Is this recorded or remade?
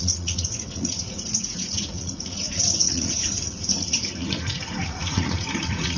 remade